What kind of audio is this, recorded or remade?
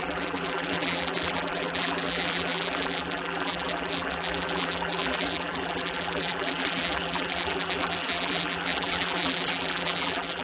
remade